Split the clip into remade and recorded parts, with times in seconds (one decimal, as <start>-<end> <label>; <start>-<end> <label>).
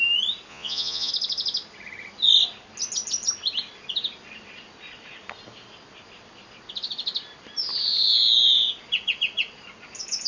0.0-0.5 recorded; 0.5-1.1 remade; 1.1-10.3 recorded